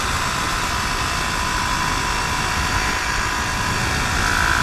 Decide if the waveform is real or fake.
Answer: real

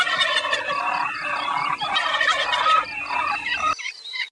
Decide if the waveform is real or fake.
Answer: fake